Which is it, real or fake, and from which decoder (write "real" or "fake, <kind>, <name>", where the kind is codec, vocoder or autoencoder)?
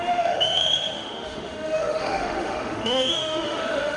fake, autoencoder, DAC-VAE